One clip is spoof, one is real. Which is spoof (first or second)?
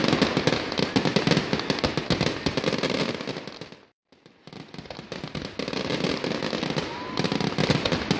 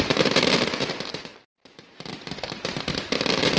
second